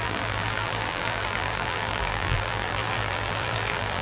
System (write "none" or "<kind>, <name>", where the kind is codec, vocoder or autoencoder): vocoder, BigVGAN v2